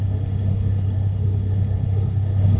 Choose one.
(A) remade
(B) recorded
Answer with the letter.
A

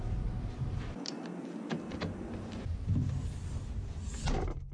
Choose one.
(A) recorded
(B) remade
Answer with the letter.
A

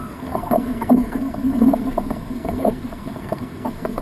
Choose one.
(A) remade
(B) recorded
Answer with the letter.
A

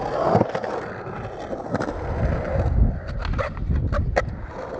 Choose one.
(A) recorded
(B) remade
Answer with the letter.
A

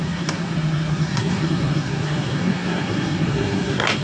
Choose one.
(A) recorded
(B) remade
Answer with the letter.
B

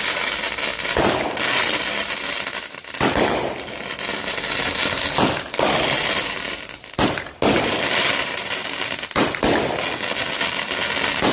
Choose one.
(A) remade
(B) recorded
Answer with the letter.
B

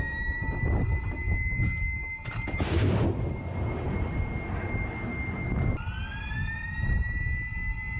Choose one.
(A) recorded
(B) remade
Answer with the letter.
A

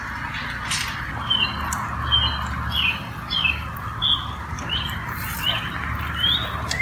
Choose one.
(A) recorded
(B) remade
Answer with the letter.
A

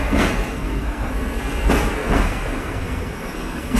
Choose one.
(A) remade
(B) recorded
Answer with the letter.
A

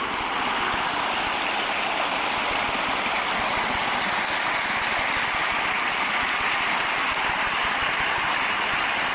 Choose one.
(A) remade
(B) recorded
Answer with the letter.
B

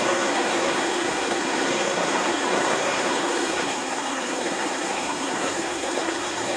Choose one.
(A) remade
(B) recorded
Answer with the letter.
A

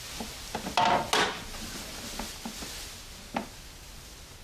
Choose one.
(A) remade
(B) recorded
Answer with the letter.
B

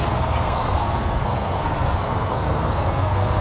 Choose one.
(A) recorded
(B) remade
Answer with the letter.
B